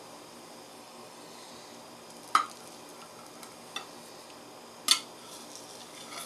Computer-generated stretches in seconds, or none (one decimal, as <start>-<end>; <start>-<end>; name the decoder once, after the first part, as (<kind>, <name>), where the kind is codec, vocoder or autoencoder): 0.7-1.5 (codec, DAC)

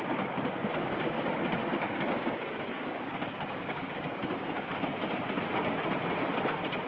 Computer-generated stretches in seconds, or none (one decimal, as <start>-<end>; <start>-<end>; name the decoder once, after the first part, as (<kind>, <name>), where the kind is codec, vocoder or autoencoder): 0.7-1.2 (codec, DAC); 1.6-4.5

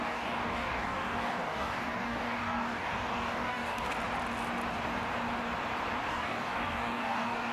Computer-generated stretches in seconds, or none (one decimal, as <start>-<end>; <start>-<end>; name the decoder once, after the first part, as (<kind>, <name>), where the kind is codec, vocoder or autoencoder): 0.0-3.9 (codec, DAC); 6.1-7.5

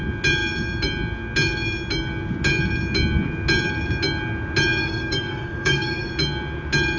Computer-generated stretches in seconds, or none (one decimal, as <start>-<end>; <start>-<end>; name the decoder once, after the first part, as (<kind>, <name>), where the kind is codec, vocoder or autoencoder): 4.8-6.1 (codec, DAC)

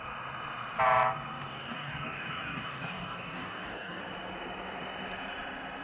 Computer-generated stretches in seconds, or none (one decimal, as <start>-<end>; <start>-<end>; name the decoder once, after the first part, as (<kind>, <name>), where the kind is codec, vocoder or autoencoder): 1.5-4.0 (codec, DAC)

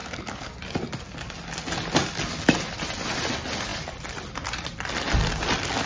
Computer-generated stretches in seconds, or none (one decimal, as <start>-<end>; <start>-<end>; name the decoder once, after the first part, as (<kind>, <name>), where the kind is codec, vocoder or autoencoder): 0.0-0.6 (codec, DAC)